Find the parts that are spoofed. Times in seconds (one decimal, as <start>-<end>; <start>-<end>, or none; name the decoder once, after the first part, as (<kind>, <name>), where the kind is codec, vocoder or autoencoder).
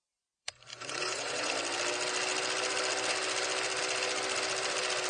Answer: 0.7-1.5 (vocoder, Vocos)